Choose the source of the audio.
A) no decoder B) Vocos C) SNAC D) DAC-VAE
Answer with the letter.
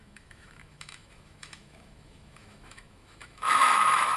D